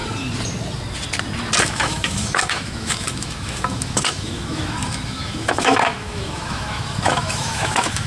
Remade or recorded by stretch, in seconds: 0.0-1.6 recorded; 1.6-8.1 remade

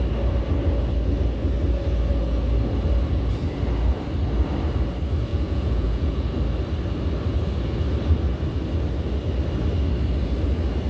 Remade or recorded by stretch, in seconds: 0.0-5.3 recorded; 5.3-6.3 remade; 6.3-10.9 recorded

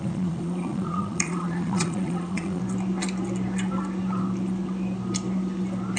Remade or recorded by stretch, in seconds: 0.0-2.6 remade; 2.6-6.0 recorded

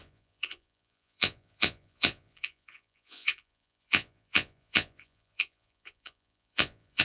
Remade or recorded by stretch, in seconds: 0.0-7.0 remade

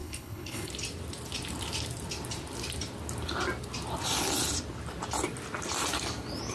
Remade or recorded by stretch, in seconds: 0.0-0.7 remade; 0.7-6.5 recorded

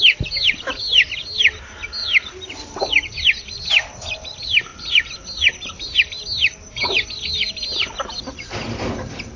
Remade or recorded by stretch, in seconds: 0.0-2.0 recorded; 2.0-3.1 remade; 3.1-9.4 recorded

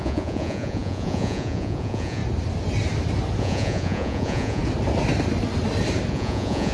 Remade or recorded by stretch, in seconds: 0.0-2.2 remade; 2.2-3.4 recorded; 3.4-4.6 remade; 4.6-6.1 recorded; 6.1-6.7 remade

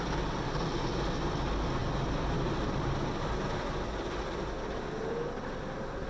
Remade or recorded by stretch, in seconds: 0.0-6.1 recorded